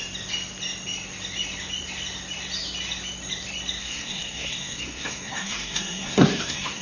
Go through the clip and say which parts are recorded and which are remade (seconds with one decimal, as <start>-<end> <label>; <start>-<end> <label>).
0.0-3.8 recorded; 3.8-6.8 remade

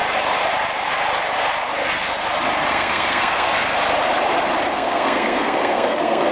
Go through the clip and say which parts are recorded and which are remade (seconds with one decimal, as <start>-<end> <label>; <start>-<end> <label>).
0.0-2.7 recorded; 2.7-3.5 remade; 3.5-4.7 recorded; 4.7-6.3 remade

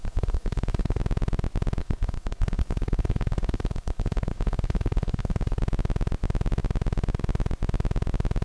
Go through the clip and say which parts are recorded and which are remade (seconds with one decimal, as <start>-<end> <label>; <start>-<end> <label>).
0.0-1.0 remade; 1.0-1.8 recorded; 1.8-5.6 remade; 5.6-8.4 recorded

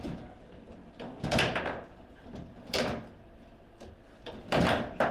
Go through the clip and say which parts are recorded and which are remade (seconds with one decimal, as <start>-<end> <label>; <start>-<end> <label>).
0.0-5.1 recorded